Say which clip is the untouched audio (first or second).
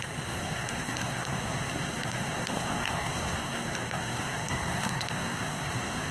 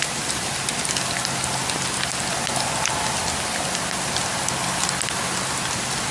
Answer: second